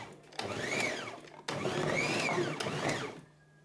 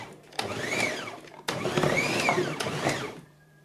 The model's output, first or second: second